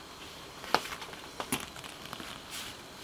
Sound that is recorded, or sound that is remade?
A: remade